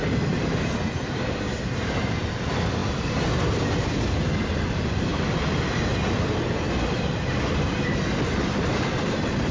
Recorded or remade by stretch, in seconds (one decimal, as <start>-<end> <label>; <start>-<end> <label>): 0.0-9.5 recorded